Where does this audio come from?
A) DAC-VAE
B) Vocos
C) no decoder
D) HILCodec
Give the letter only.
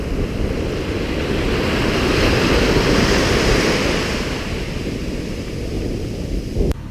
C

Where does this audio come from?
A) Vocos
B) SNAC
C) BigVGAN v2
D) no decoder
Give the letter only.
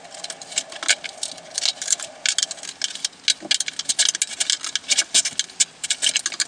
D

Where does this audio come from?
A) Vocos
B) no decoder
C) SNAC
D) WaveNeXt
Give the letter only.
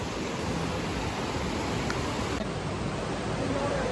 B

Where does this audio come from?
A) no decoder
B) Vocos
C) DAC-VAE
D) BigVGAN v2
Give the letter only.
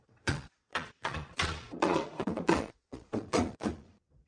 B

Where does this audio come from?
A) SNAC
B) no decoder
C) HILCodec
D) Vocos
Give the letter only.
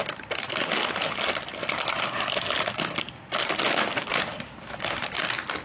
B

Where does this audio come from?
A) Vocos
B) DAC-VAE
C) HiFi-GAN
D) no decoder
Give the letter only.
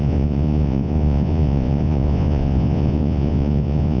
A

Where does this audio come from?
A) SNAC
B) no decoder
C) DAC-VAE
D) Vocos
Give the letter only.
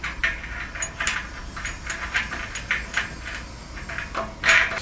B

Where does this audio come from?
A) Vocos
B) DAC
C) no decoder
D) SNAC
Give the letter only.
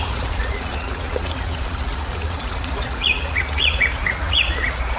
A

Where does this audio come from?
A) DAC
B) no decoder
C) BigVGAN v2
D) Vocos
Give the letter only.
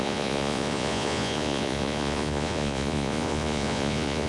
D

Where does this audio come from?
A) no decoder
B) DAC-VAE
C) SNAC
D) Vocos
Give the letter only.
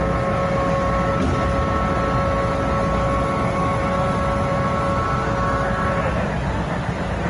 A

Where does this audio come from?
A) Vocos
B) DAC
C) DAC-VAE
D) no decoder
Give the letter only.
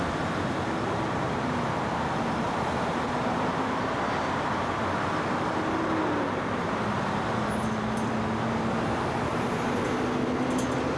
D